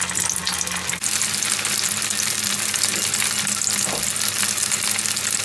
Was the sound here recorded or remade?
recorded